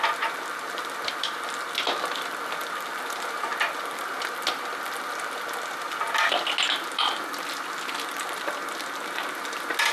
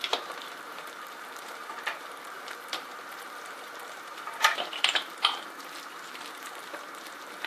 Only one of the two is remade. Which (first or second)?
second